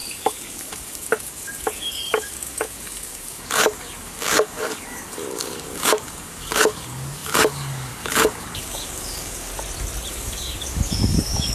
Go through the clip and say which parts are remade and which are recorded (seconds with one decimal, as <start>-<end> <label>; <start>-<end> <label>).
0.0-9.5 remade; 9.5-10.1 recorded; 10.1-11.5 remade